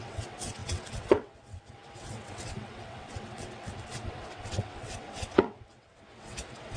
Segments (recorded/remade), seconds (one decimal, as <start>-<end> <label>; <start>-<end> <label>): 0.0-6.8 remade